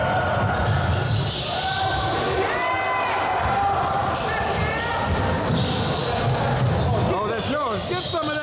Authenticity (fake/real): real